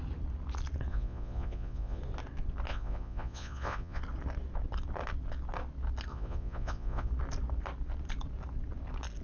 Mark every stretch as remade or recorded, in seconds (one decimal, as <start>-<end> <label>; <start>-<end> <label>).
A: 0.0-0.9 recorded; 0.9-2.0 remade; 2.0-2.7 recorded; 2.7-4.0 remade; 4.0-6.1 recorded; 6.1-7.1 remade; 7.1-9.2 recorded